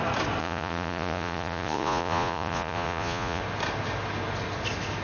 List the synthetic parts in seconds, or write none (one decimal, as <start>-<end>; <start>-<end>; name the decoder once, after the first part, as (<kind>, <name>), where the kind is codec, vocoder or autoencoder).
0.4-3.4 (vocoder, Vocos)